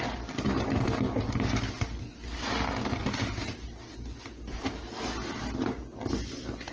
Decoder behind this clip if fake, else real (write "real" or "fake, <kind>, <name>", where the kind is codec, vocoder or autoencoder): real